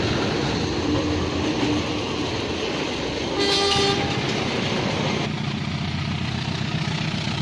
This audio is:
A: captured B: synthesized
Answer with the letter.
A